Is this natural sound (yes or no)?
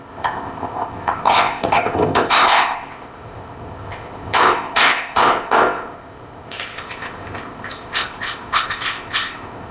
no